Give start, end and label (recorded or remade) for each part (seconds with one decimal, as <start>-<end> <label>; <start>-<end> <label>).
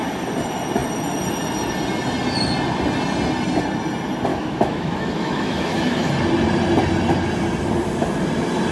0.0-4.3 recorded; 4.3-6.1 remade; 6.1-8.7 recorded